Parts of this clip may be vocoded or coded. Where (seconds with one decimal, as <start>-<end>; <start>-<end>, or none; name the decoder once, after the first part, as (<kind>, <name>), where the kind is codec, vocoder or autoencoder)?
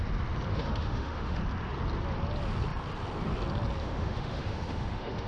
0.5-1.4 (autoencoder, DAC-VAE); 3.8-5.3